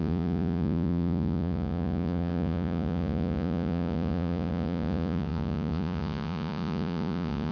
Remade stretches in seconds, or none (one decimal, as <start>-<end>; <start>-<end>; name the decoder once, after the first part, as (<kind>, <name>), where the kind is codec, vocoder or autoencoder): 0.0-7.5 (vocoder, Vocos)

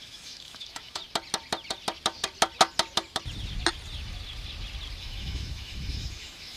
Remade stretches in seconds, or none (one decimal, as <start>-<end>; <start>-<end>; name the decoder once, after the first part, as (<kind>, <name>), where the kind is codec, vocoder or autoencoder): 0.0-1.0 (autoencoder, DAC-VAE); 5.0-6.6

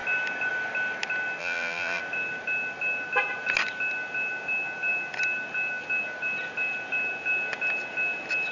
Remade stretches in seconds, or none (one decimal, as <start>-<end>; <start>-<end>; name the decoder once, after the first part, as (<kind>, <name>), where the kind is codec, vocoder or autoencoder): 1.4-2.0 (vocoder, BigVGAN v2)

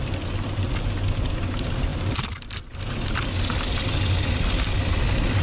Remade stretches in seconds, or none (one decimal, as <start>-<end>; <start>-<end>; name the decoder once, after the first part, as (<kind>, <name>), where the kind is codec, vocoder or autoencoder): none

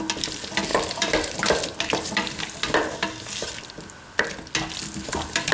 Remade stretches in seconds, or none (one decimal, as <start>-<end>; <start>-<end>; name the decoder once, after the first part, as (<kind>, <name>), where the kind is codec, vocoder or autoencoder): 0.7-3.7 (vocoder, BigVGAN v2)

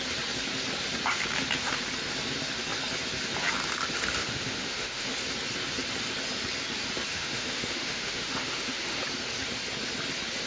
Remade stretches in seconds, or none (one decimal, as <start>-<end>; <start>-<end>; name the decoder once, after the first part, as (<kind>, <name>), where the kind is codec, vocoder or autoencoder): 4.2-5.1 (autoencoder, DAC-VAE); 7.1-9.0

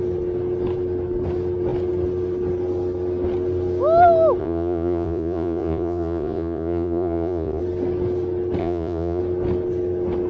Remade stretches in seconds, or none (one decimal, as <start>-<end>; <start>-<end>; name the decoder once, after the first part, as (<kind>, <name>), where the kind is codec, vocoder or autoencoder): 4.4-7.6 (vocoder, Vocos); 8.6-9.2

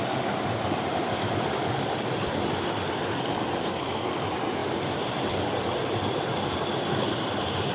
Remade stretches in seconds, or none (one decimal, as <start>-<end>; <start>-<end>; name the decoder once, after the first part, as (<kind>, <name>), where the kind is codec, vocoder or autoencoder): 3.6-4.1 (codec, SNAC)